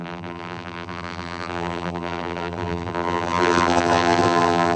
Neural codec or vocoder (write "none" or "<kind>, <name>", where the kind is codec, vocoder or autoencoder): vocoder, BigVGAN v2